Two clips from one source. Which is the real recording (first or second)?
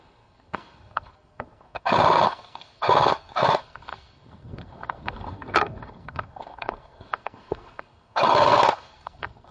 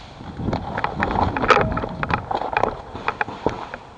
second